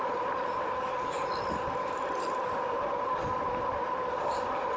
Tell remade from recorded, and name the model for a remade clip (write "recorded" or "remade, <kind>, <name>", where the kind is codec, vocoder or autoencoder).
recorded